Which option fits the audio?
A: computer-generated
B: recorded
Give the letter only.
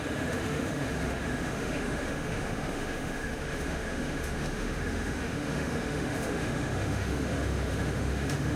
A